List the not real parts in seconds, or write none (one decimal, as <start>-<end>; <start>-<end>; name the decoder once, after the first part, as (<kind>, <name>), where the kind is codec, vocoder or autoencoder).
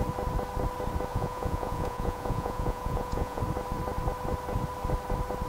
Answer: 1.1-3.4 (vocoder, Vocos)